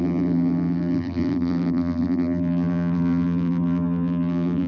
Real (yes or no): no